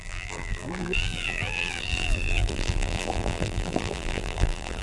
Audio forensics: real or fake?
fake